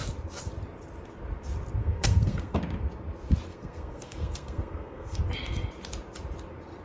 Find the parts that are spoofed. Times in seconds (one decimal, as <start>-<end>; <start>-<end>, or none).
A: 1.8-2.6; 3.5-5.2

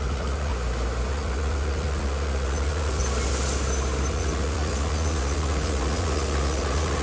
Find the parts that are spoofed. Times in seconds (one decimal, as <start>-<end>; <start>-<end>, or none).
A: 0.0-0.5; 1.1-3.0; 4.1-7.0